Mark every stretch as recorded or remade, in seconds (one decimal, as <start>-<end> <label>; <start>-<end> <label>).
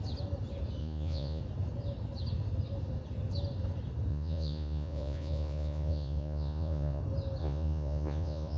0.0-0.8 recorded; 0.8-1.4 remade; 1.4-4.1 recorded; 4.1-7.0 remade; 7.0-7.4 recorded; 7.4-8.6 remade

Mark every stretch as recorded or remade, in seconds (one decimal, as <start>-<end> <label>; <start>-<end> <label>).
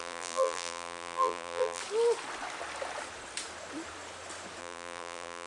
0.0-1.8 remade; 1.8-4.6 recorded; 4.6-5.5 remade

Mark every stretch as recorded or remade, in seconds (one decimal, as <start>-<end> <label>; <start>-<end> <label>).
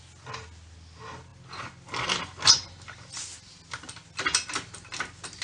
0.0-5.4 recorded